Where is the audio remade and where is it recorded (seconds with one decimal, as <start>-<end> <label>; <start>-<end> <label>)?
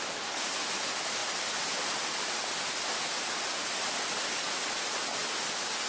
0.0-5.9 recorded